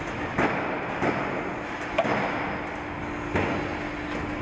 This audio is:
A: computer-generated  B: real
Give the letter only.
B